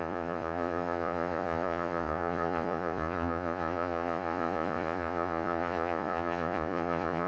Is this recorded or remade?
remade